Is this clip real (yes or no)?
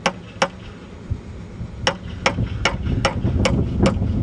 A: yes